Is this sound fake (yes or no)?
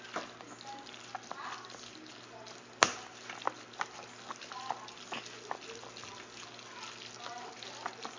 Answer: no